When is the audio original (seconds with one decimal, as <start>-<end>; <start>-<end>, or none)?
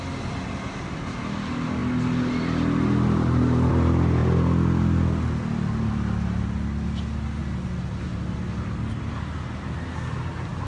0.0-10.7